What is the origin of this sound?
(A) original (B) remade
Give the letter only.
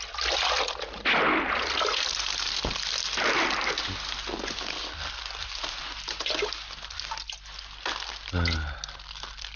A